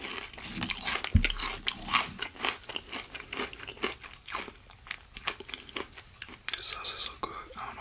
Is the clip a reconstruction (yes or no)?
no